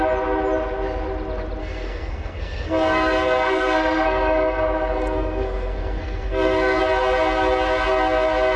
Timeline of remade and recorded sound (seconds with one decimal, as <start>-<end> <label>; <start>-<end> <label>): 0.0-1.6 recorded; 1.6-6.8 remade; 6.8-8.6 recorded